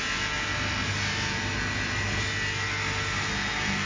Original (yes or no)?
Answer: yes